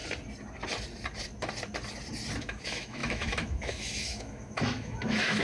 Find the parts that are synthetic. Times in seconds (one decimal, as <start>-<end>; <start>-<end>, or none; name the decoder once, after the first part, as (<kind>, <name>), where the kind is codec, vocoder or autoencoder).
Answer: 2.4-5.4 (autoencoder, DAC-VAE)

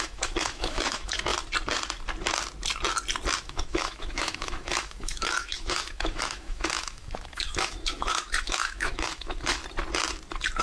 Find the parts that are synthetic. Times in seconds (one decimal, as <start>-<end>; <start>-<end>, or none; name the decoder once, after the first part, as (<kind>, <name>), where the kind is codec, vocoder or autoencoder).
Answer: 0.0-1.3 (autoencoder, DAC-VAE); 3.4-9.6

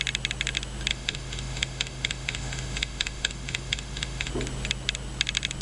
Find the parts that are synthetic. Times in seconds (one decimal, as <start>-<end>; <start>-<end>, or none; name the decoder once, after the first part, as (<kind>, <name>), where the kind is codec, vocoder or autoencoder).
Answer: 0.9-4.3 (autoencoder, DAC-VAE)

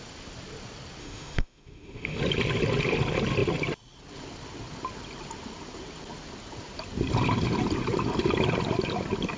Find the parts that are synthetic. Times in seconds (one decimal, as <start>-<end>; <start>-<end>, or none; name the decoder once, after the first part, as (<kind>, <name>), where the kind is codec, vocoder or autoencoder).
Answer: 1.0-2.2 (autoencoder, DAC-VAE)

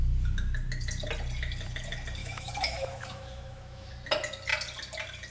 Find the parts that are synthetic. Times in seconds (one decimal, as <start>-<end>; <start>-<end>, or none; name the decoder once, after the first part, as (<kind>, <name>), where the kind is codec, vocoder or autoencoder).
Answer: 2.2-3.9 (autoencoder, DAC-VAE)

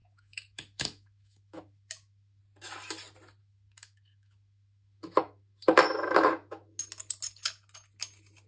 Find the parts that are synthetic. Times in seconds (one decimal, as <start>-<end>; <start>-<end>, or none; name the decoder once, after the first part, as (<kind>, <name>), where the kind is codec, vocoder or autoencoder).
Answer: 0.0-2.4 (autoencoder, DAC-VAE); 3.4-6.8